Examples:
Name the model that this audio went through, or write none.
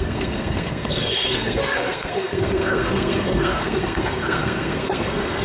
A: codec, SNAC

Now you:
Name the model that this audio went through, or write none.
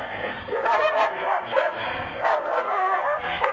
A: codec, SNAC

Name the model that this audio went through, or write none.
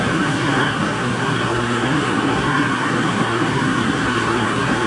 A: codec, SNAC